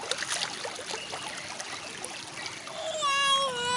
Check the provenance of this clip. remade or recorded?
recorded